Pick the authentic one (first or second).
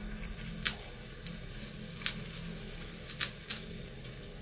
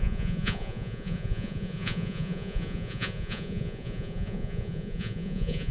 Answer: first